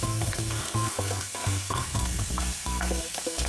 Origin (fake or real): fake